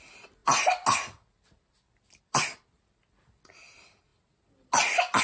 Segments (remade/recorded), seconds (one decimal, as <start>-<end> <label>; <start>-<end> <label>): 0.0-5.2 recorded